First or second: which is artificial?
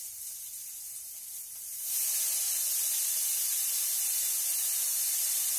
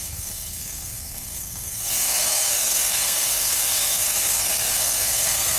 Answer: second